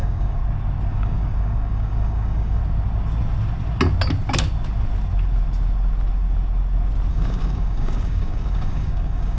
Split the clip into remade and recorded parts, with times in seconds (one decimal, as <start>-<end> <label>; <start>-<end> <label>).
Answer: 0.0-0.4 remade; 0.4-0.9 recorded; 0.9-2.6 remade; 2.6-7.1 recorded; 7.1-9.4 remade